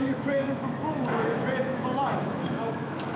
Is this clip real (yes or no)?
no